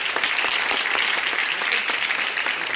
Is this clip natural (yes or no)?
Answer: yes